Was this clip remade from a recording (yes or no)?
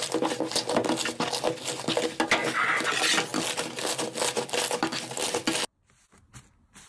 no